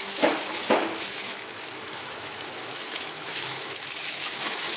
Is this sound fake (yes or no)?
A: yes